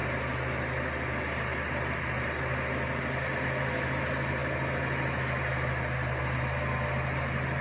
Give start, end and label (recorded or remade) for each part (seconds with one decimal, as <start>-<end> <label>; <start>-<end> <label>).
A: 0.0-7.6 recorded